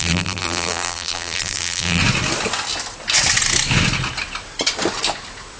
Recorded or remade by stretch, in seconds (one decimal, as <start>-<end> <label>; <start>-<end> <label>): 0.0-2.0 remade; 2.0-5.6 recorded